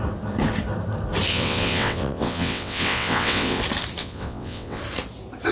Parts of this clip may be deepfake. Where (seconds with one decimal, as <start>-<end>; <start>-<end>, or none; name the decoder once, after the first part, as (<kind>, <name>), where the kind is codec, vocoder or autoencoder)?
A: 1.3-3.6 (vocoder, WaveNeXt); 4.0-4.8

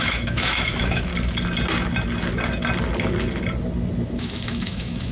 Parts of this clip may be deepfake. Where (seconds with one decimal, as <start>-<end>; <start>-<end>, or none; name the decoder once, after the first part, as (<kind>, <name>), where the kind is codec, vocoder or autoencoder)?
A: 0.0-1.1 (autoencoder, DAC-VAE); 4.2-5.1